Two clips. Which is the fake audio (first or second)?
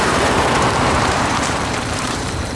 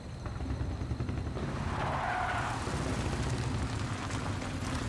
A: first